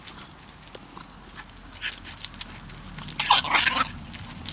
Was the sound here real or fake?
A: real